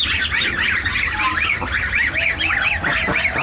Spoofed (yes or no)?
no